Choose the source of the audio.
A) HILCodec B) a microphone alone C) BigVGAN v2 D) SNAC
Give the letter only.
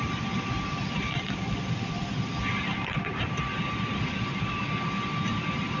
B